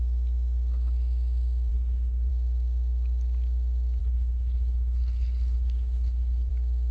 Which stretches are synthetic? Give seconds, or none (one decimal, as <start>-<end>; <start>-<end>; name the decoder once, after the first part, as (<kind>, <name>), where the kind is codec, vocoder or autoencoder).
1.7-2.3 (codec, HILCodec); 4.0-6.5